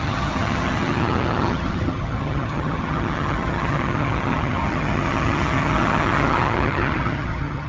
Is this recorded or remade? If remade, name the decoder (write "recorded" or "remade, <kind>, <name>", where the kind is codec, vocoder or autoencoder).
remade, vocoder, HiFi-GAN